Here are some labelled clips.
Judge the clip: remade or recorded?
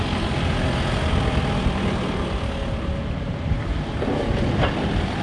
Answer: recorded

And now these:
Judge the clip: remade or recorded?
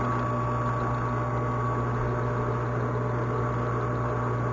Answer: recorded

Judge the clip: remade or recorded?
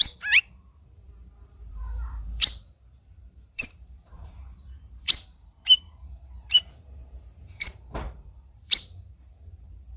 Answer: remade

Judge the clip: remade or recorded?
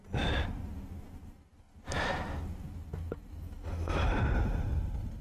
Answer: recorded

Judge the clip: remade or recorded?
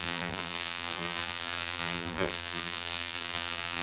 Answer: remade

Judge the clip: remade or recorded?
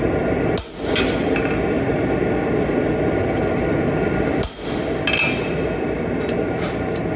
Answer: recorded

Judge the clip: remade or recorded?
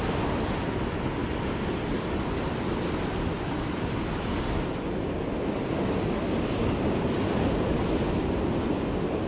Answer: recorded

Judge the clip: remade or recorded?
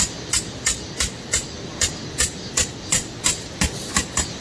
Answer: remade